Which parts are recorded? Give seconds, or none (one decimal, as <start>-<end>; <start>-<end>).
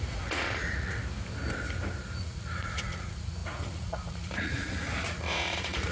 1.0-2.2